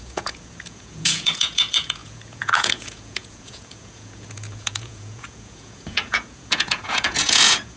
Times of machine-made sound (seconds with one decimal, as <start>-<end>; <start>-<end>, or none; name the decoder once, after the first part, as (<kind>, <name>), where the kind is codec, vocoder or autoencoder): 0.0-7.8 (vocoder, Vocos)